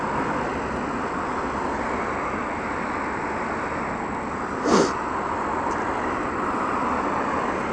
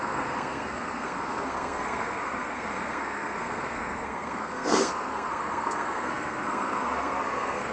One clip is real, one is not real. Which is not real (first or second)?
second